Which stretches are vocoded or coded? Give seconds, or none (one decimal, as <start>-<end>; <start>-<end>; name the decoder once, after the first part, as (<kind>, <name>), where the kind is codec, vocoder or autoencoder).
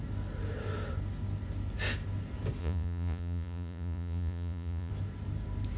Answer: 2.6-4.9 (vocoder, Vocos)